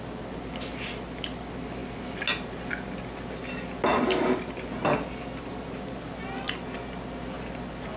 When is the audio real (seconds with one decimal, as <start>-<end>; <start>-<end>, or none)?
0.0-8.0